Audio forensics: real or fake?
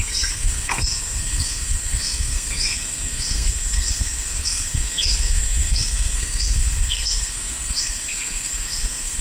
fake